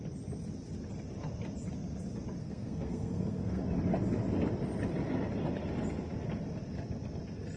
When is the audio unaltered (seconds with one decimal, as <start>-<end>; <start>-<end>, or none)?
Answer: 0.0-2.4; 3.6-7.6

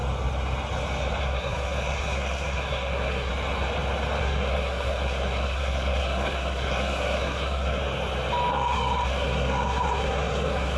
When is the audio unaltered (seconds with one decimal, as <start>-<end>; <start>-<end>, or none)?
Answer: 0.0-1.2; 3.3-4.2; 7.8-8.5